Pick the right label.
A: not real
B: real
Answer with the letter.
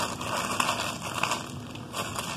B